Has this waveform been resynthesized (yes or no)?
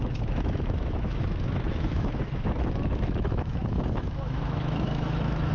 yes